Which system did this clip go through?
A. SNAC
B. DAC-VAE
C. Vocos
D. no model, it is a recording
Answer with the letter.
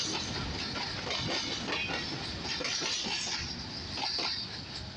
D